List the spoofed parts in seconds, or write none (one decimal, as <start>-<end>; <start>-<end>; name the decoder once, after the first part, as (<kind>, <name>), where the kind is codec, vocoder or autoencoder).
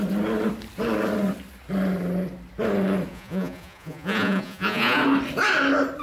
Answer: 3.1-5.0 (vocoder, Vocos)